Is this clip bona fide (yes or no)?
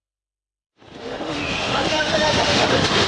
no